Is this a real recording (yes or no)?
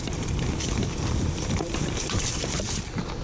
no